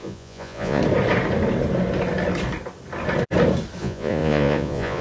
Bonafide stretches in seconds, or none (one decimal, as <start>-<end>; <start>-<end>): 0.8-3.8